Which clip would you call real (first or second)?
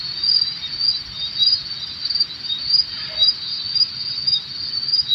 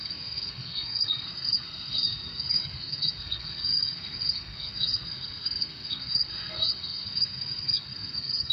first